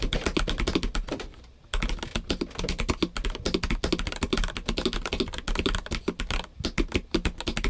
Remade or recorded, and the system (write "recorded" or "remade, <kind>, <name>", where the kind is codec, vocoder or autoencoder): recorded